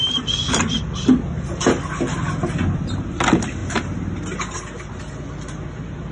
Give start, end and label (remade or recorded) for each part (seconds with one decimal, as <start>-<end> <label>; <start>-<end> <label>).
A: 0.0-6.1 recorded